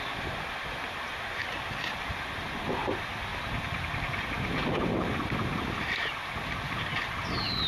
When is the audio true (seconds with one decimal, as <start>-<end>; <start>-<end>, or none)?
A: none